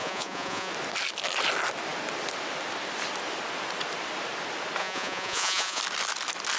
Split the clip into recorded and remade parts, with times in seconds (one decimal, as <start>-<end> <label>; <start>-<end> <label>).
0.0-0.7 remade; 0.7-4.8 recorded; 4.8-5.8 remade; 5.8-6.6 recorded